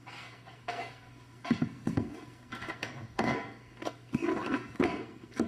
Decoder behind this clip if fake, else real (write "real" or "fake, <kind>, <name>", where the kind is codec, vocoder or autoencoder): fake, codec, SNAC